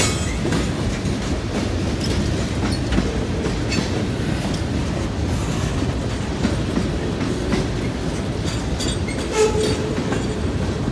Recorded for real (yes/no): yes